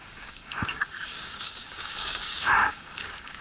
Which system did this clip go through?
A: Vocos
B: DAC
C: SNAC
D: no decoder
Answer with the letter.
B